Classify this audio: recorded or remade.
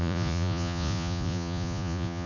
remade